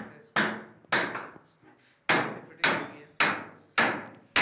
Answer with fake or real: real